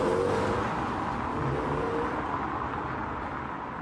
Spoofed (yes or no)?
no